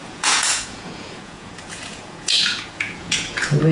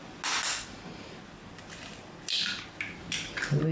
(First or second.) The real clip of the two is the second